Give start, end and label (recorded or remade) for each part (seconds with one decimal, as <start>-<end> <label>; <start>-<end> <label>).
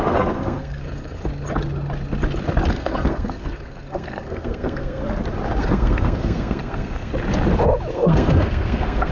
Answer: 0.0-1.2 remade; 1.2-2.7 recorded; 2.7-5.0 remade; 5.0-5.6 recorded; 5.6-7.1 remade; 7.1-7.9 recorded; 7.9-9.1 remade